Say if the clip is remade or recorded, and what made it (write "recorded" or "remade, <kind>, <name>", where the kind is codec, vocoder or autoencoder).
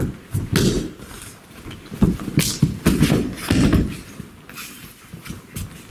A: recorded